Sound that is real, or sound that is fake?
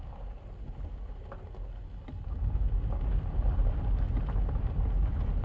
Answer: real